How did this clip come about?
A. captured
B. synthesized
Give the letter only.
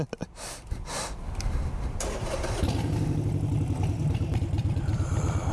A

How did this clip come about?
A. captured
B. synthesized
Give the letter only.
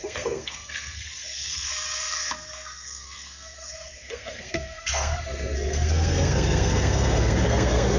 B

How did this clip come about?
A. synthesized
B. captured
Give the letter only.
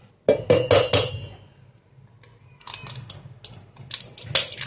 B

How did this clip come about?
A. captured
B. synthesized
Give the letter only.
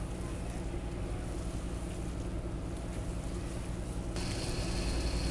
A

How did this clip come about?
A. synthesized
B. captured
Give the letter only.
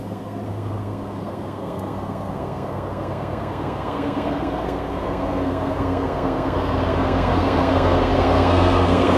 A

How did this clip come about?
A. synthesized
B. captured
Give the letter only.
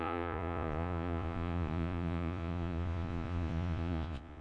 A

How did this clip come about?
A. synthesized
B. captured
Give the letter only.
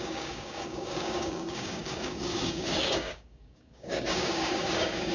A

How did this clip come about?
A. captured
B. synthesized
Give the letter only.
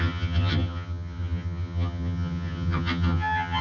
B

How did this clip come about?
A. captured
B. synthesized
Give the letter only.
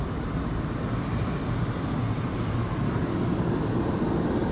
A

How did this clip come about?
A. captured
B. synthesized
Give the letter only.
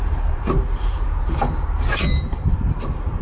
B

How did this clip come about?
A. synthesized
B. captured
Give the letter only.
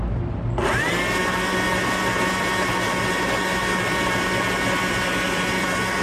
B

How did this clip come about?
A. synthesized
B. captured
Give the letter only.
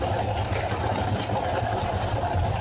B